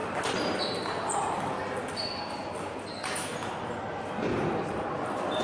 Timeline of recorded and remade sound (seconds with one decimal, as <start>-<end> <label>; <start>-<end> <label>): 0.0-2.3 recorded; 2.3-3.3 remade; 3.3-5.0 recorded; 5.0-5.4 remade